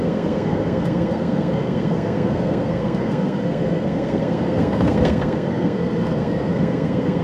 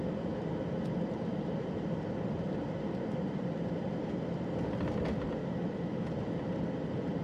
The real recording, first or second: second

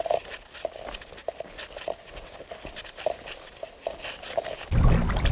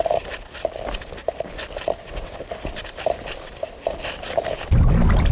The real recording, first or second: first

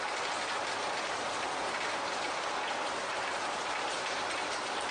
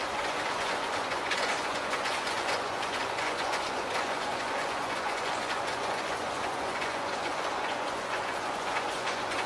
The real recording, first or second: first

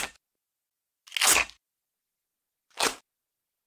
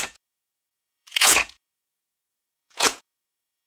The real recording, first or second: first